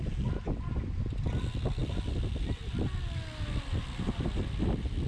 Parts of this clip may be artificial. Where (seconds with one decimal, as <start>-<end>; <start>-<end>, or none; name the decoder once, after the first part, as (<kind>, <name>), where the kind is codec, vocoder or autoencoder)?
1.8-2.6 (vocoder, BigVGAN v2)